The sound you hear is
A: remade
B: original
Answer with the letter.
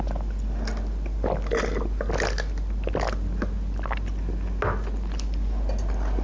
B